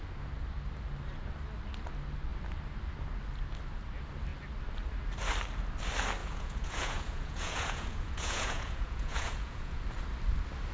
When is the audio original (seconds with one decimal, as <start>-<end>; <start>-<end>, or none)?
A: 0.0-6.2; 9.8-10.7